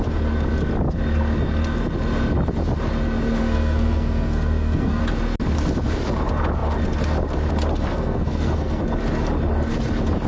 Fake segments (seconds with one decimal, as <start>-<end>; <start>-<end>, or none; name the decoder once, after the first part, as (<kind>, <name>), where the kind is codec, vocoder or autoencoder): 3.4-5.0 (codec, SNAC); 7.9-8.8